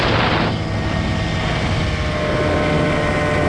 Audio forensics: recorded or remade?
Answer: recorded